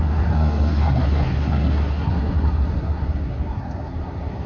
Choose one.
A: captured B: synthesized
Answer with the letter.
B